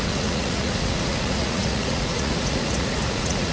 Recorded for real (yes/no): no